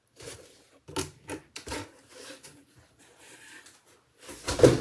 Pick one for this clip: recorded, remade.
recorded